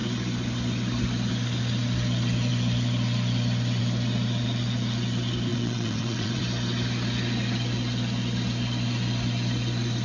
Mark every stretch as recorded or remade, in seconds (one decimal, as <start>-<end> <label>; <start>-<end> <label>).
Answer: 0.0-5.5 recorded; 5.5-6.4 remade; 6.4-10.0 recorded